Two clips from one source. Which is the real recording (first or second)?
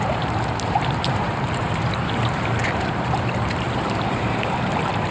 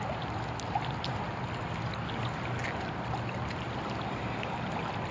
second